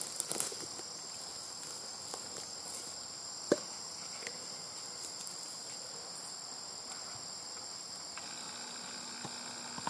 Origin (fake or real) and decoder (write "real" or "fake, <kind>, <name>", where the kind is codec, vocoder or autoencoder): real